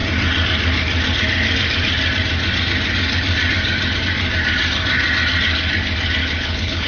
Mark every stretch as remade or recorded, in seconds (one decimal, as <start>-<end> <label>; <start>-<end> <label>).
0.0-6.2 recorded; 6.2-6.9 remade